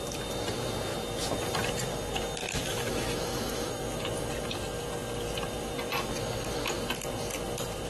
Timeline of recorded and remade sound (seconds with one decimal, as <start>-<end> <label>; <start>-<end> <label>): 0.0-2.4 recorded; 2.4-3.7 remade; 3.7-7.9 recorded